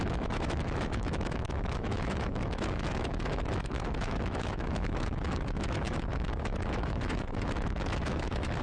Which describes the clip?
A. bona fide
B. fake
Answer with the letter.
B